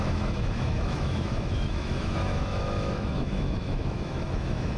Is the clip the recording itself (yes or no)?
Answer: no